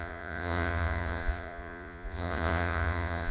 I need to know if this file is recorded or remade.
remade